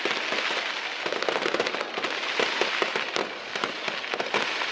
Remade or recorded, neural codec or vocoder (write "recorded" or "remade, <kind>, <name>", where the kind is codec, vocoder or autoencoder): recorded